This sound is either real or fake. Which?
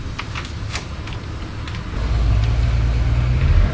real